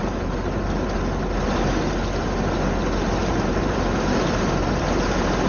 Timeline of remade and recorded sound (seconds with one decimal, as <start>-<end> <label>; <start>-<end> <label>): 0.0-3.2 recorded; 3.2-4.8 remade; 4.8-5.5 recorded